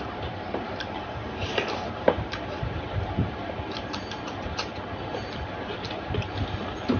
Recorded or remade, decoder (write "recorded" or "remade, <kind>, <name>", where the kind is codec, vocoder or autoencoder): remade, vocoder, BigVGAN v2